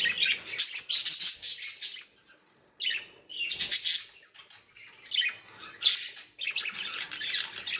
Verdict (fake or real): real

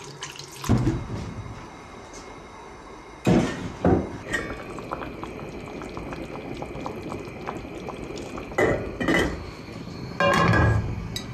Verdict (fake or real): real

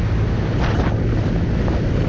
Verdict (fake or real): real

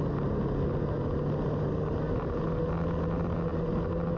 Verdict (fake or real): real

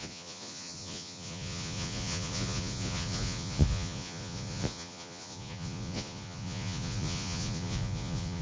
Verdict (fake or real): fake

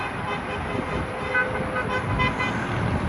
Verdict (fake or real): real